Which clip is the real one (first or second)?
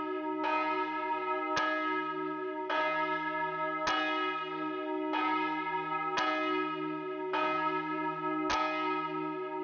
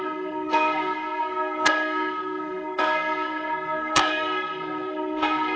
first